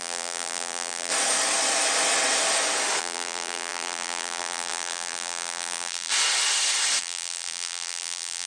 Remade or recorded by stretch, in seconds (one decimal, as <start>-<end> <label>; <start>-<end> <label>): 0.0-1.1 remade; 1.1-3.0 recorded; 3.0-6.1 remade; 6.1-7.0 recorded; 7.0-8.5 remade